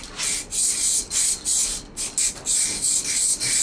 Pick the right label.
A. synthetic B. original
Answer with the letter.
B